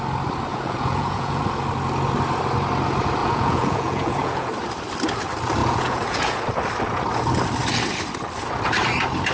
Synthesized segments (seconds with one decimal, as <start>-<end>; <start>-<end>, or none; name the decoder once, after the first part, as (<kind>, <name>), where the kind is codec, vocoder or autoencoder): 0.5-1.4 (vocoder, Vocos); 3.2-4.5; 5.6-6.4